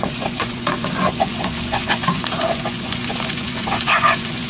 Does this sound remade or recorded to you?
remade